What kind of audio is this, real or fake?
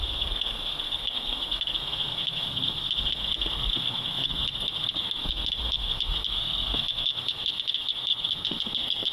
fake